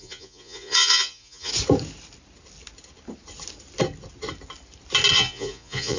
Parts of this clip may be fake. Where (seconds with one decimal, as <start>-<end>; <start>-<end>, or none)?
0.0-1.5; 5.1-6.0